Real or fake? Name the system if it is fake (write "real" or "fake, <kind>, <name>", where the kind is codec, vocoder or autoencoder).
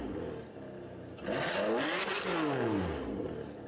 real